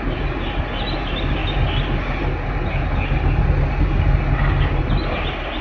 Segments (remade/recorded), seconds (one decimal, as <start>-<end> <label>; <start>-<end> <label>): 0.0-5.6 recorded